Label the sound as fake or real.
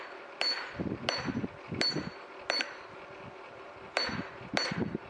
real